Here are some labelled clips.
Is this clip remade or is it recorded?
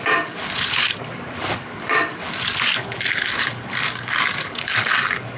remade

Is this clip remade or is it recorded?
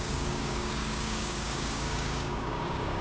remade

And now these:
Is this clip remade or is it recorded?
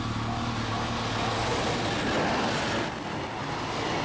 recorded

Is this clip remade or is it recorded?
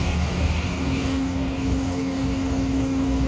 remade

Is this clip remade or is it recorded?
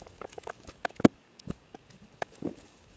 remade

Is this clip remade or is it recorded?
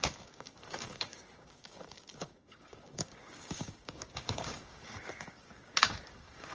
remade